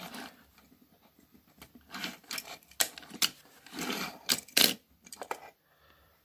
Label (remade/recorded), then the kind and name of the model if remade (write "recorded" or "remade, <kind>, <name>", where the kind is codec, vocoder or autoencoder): recorded